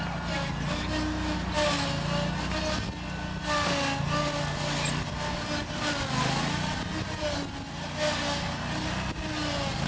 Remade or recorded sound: recorded